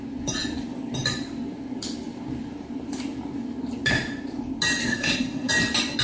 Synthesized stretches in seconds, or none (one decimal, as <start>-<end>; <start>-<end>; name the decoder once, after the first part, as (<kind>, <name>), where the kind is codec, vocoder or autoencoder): 4.8-5.5 (codec, SNAC)